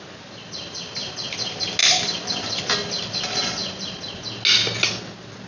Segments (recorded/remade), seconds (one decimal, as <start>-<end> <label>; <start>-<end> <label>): 0.0-1.8 recorded; 1.8-2.6 remade; 2.6-5.5 recorded